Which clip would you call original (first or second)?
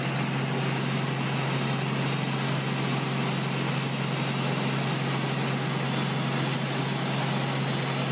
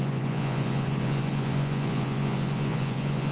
first